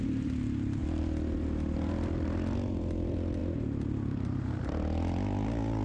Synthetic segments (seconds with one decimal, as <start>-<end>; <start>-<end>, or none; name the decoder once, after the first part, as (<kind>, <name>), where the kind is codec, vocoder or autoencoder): none